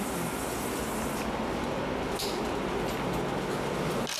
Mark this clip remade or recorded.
recorded